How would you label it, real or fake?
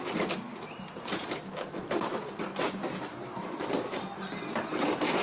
real